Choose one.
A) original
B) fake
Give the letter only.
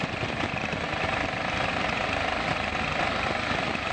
B